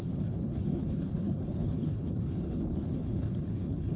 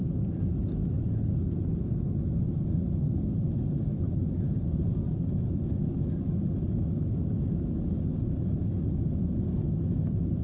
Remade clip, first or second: first